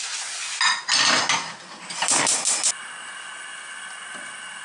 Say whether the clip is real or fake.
real